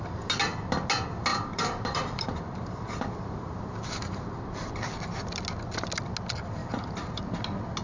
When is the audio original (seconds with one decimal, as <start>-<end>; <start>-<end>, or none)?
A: 0.0-1.3; 4.7-6.6; 7.2-7.8